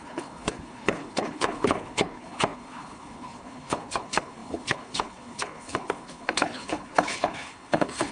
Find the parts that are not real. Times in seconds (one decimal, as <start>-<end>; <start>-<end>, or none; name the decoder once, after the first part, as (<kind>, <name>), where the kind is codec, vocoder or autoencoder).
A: 0.0-8.1 (codec, HILCodec)